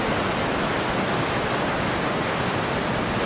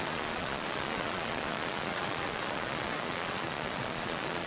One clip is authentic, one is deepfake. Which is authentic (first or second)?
first